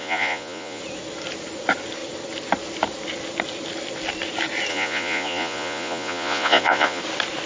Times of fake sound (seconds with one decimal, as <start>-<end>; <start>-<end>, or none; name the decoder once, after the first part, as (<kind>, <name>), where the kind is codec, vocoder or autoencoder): 0.0-0.8 (vocoder, Vocos); 4.7-7.0